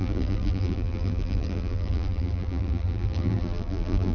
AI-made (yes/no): yes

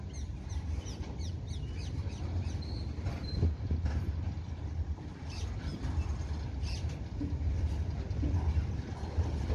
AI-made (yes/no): no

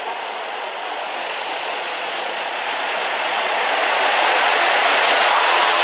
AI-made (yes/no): yes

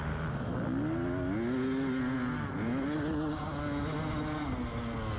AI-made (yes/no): no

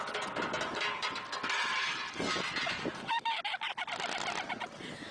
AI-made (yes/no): no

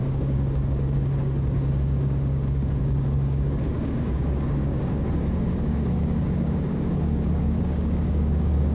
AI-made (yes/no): yes